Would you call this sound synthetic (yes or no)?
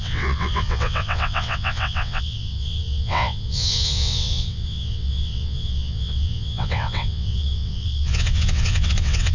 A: yes